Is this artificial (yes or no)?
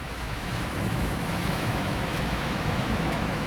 yes